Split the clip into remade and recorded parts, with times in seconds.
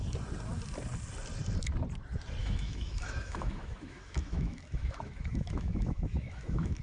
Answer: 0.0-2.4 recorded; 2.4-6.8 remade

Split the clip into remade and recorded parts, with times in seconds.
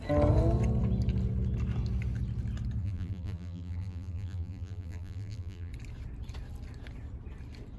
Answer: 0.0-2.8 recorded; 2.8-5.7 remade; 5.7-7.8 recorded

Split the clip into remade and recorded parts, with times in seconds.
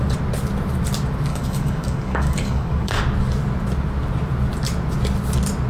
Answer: 0.0-1.3 recorded; 1.3-3.0 remade; 3.0-5.7 recorded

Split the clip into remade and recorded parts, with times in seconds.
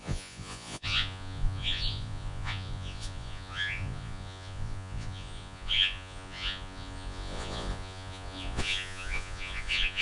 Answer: 0.0-10.0 remade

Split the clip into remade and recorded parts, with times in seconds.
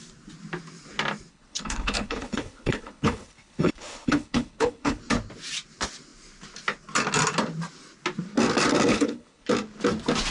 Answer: 0.0-1.3 recorded; 1.3-5.0 remade; 5.0-8.9 recorded; 8.9-9.5 remade; 9.5-10.3 recorded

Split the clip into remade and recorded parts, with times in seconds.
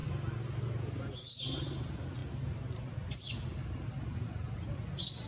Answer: 0.0-5.3 recorded